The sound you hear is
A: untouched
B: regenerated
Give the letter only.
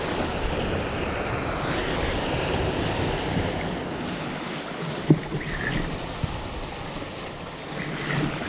A